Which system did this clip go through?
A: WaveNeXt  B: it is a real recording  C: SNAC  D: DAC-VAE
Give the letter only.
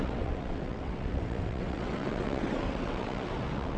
A